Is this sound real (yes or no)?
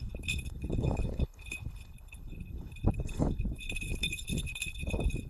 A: no